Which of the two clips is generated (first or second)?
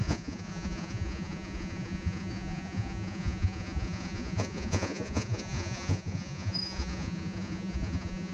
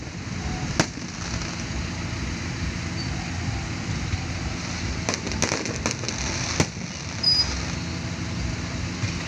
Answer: first